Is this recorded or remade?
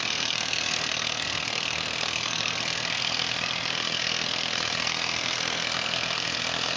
remade